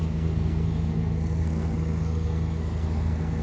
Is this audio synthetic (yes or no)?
yes